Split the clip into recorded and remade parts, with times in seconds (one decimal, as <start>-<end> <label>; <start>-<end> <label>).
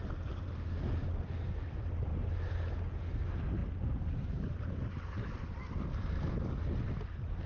0.0-7.5 recorded